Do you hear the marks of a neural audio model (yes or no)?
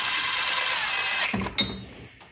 no